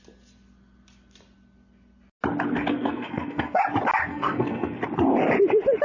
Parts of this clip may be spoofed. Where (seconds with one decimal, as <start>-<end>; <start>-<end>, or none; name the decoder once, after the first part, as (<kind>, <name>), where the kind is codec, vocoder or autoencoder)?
2.7-3.6 (codec, SNAC); 4.1-4.8